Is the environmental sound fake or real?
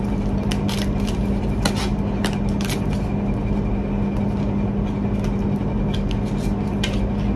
real